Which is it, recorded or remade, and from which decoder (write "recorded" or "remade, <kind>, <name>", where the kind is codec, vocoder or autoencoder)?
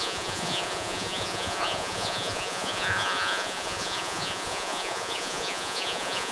remade, vocoder, Vocos